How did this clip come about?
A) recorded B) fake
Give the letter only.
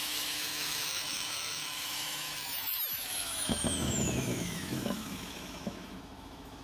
B